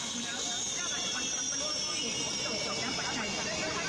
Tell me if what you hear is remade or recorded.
recorded